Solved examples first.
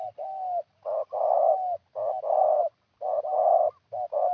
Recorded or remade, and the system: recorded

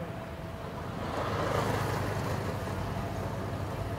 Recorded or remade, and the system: recorded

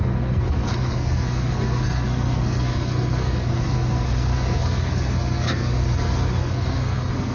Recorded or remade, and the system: remade, codec, SNAC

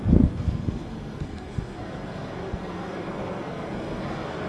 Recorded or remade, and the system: remade, codec, SNAC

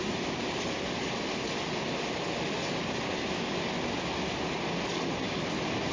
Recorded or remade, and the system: recorded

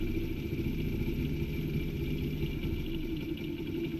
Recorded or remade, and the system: recorded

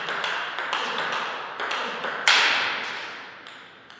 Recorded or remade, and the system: recorded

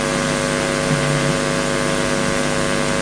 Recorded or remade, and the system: recorded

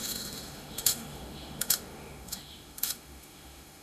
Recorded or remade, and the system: remade, autoencoder, DAC-VAE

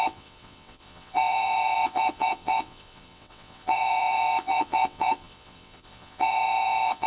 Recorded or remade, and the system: remade, vocoder, WaveNeXt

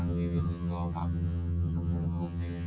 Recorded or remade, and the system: remade, vocoder, HiFi-GAN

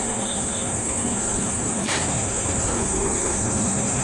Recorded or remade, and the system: remade, codec, SNAC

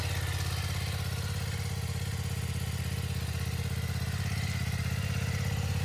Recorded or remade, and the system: recorded